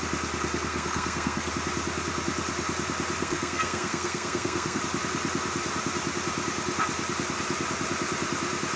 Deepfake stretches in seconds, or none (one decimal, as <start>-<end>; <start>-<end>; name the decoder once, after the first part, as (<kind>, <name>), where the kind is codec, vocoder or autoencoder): 0.7-1.5 (codec, SNAC); 3.2-4.8